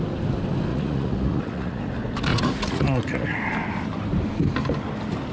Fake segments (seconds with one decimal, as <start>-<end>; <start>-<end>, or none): 0.7-1.9; 2.3-3.4